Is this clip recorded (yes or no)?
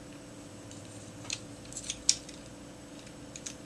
yes